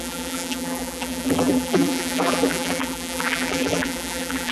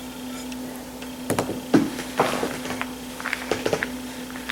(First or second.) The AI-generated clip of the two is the first